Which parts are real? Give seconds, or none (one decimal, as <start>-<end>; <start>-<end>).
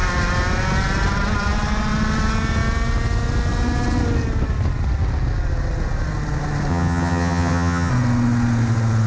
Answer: 0.0-6.7; 7.9-9.1